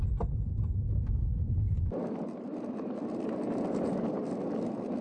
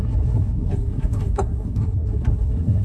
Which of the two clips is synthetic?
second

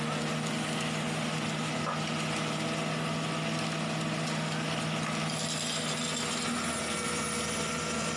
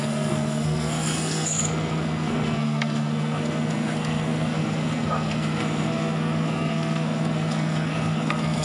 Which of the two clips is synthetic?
second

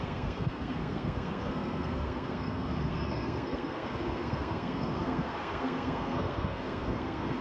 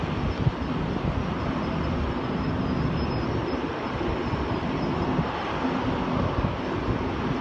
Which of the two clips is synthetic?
first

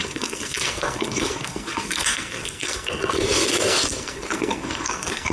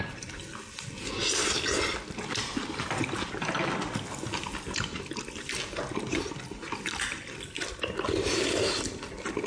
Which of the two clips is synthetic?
first